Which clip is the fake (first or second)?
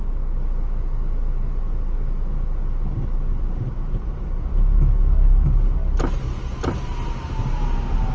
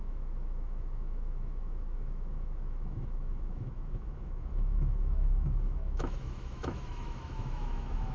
second